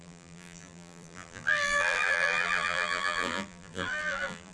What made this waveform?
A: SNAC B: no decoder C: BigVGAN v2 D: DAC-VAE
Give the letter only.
C